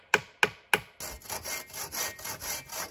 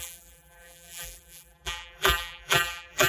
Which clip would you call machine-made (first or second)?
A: second